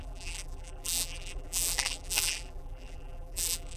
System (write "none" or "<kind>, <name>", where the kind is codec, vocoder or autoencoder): vocoder, BigVGAN v2